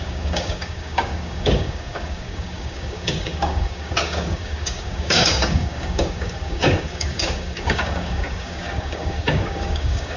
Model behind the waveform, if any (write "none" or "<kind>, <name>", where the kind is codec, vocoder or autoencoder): codec, DAC